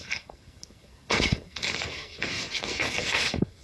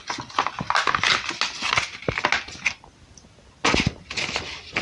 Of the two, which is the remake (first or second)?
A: first